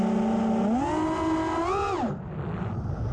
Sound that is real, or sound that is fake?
real